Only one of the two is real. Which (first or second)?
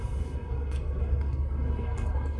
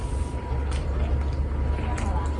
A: second